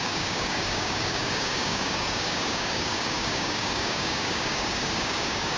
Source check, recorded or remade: remade